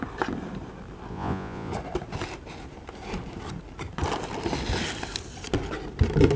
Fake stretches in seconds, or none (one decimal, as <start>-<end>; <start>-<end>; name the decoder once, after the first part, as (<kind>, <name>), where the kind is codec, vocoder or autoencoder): 1.1-1.7 (vocoder, Vocos)